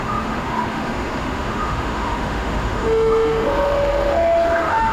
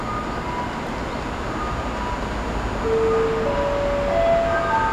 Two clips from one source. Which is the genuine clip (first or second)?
second